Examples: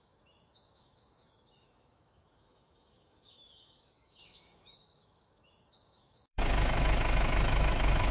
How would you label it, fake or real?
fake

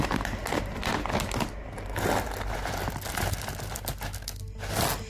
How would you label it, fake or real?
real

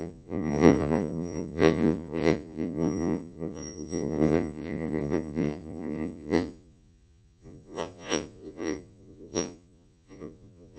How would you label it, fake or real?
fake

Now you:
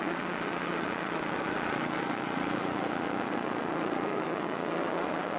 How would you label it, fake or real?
fake